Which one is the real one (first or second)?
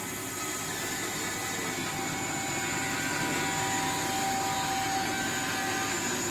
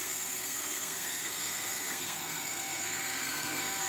first